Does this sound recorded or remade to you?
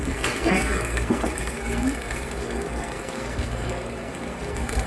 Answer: remade